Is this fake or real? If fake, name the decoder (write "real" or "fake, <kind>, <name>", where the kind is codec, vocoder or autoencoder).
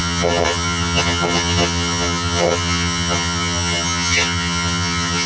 fake, vocoder, HiFi-GAN